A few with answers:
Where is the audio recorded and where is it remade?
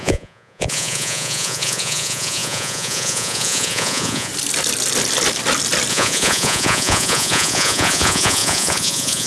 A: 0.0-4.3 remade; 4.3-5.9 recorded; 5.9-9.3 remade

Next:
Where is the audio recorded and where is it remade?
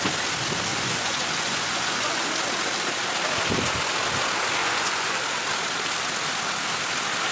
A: 0.0-0.7 recorded; 0.7-2.3 remade; 2.3-4.6 recorded; 4.6-5.2 remade; 5.2-7.3 recorded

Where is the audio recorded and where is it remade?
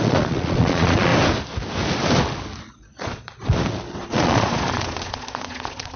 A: 0.0-1.1 remade; 1.1-2.7 recorded; 2.7-3.5 remade; 3.5-4.0 recorded; 4.0-6.0 remade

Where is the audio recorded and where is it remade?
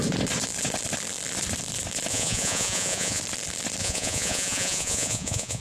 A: 0.0-2.1 recorded; 2.1-3.2 remade; 3.2-3.8 recorded; 3.8-5.6 remade